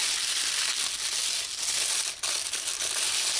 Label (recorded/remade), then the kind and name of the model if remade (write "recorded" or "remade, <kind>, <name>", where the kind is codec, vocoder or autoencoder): recorded